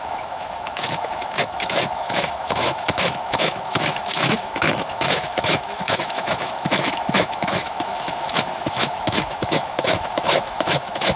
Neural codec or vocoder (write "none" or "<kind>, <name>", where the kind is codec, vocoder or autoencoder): autoencoder, DAC-VAE